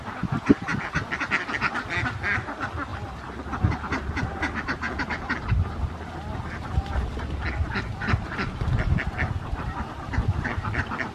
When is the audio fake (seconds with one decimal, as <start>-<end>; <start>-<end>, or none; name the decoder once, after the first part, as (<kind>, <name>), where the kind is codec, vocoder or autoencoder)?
none